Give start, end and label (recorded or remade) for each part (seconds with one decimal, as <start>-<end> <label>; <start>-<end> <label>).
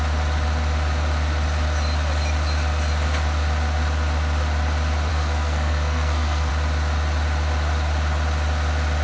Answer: 0.0-5.1 recorded; 5.1-6.5 remade; 6.5-9.0 recorded